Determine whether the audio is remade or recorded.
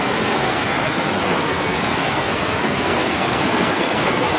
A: remade